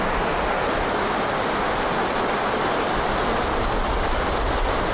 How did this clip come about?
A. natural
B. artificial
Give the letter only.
A